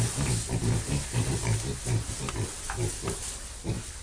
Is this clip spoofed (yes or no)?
no